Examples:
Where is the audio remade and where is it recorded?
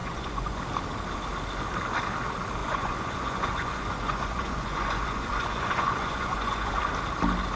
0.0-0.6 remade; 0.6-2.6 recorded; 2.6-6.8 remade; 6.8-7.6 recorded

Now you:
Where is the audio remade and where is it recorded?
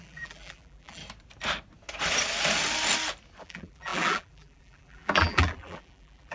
0.0-1.0 remade; 1.0-3.4 recorded; 3.4-6.3 remade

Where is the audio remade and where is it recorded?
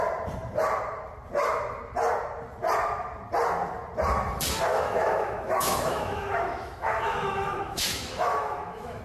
0.0-4.7 recorded; 4.7-9.0 remade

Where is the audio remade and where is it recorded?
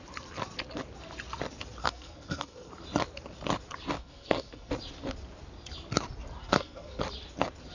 0.0-1.8 recorded; 1.8-2.7 remade; 2.7-4.0 recorded; 4.0-4.7 remade; 4.7-6.4 recorded; 6.4-7.0 remade; 7.0-7.7 recorded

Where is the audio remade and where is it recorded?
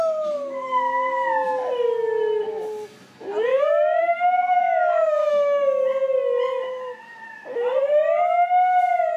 0.0-3.5 recorded; 3.5-5.3 remade; 5.3-9.2 recorded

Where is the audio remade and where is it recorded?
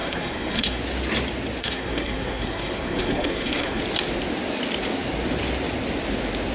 0.0-0.8 remade; 0.8-1.6 recorded; 1.6-3.8 remade; 3.8-6.5 recorded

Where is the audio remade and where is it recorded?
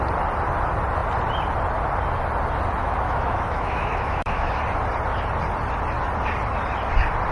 0.0-2.8 recorded; 2.8-4.6 remade; 4.6-7.3 recorded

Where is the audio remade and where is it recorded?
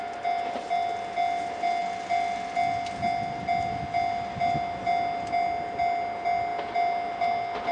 0.0-7.7 recorded